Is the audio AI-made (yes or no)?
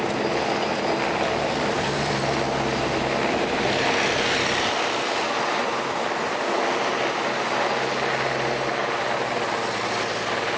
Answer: no